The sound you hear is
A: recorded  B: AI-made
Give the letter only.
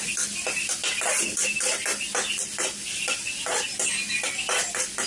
A